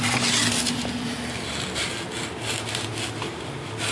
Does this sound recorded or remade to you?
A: recorded